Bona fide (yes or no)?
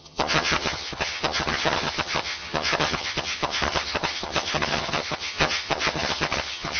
no